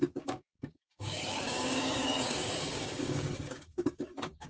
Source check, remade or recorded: remade